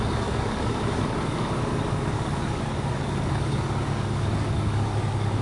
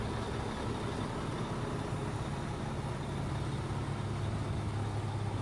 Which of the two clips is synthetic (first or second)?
first